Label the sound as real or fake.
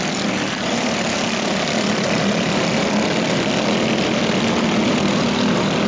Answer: fake